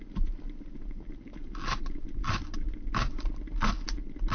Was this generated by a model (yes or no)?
no